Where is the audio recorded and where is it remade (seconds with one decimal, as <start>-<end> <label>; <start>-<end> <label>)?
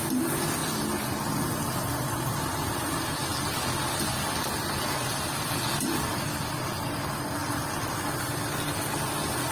0.0-9.5 recorded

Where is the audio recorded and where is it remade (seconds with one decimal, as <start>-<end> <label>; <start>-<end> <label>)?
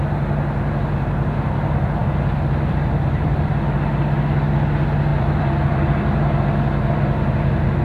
0.0-2.0 recorded; 2.0-3.5 remade; 3.5-5.1 recorded; 5.1-6.4 remade; 6.4-7.8 recorded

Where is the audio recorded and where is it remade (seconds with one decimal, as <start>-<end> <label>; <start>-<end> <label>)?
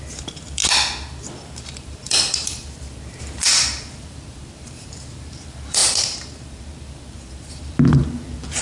0.0-0.6 remade; 0.6-1.2 recorded; 1.2-8.6 remade